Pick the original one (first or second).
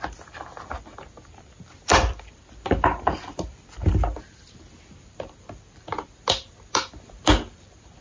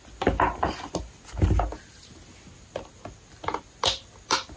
second